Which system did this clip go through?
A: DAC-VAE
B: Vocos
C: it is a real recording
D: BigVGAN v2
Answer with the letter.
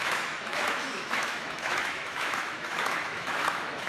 A